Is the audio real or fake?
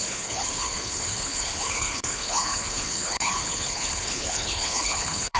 fake